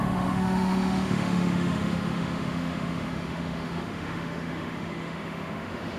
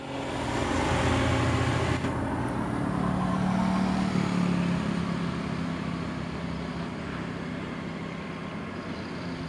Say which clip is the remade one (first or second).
first